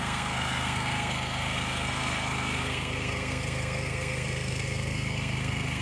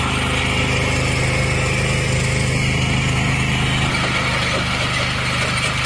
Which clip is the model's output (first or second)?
first